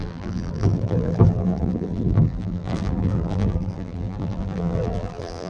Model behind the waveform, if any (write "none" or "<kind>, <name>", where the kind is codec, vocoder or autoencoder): vocoder, BigVGAN v2